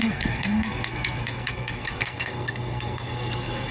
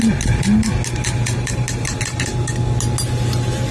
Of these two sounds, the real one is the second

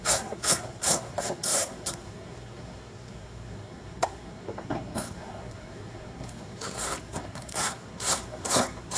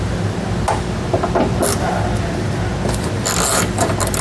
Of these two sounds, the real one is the second